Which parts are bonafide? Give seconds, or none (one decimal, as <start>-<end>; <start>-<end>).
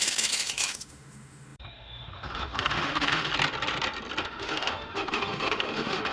3.3-4.2